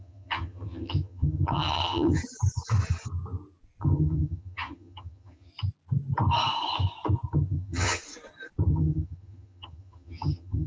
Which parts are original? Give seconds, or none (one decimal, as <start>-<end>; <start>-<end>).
2.2-3.8; 5.5-7.3; 8.0-8.7